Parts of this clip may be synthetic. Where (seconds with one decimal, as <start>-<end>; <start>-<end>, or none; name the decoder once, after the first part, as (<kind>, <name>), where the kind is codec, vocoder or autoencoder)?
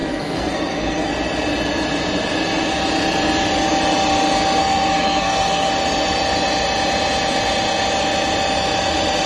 0.0-1.1 (codec, SNAC); 4.6-5.7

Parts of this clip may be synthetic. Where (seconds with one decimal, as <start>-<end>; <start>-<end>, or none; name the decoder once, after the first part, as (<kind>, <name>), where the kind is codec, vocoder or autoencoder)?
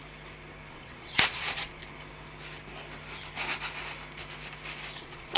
0.7-1.8 (vocoder, Vocos); 5.0-5.4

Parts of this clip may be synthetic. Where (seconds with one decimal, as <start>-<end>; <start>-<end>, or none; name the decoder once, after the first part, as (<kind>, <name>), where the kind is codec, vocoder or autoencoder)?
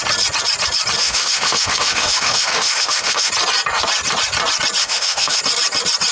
1.0-3.3 (autoencoder, DAC-VAE); 4.8-5.4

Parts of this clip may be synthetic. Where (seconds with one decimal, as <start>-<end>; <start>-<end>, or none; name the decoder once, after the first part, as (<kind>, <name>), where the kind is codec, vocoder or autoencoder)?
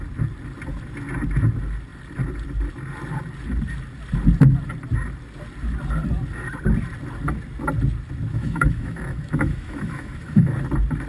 8.3-10.5 (autoencoder, DAC-VAE)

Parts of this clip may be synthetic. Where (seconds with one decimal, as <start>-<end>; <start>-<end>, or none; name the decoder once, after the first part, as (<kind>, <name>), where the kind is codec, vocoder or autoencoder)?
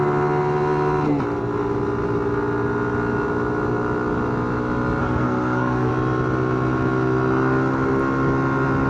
5.0-5.9 (codec, SNAC)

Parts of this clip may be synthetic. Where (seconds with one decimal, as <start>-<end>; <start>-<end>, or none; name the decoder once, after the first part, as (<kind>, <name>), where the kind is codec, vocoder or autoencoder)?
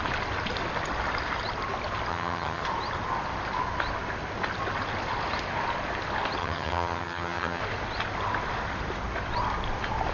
2.1-2.6 (vocoder, HiFi-GAN); 6.4-7.6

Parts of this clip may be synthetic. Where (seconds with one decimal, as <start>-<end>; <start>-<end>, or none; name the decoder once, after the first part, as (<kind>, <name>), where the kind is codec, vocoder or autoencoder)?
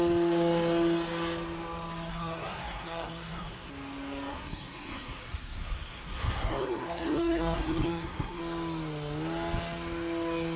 2.1-3.7 (codec, SNAC); 4.3-8.4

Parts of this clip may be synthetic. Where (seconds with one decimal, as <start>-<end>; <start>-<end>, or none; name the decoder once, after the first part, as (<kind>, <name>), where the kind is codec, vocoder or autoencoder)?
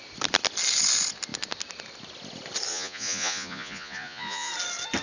2.7-4.5 (vocoder, Vocos)